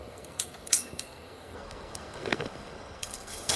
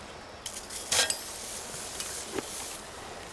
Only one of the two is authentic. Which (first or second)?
second